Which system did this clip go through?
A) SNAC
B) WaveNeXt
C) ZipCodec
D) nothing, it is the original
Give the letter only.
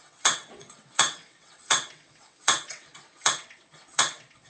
B